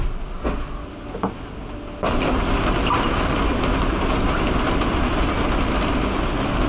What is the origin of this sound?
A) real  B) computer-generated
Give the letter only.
A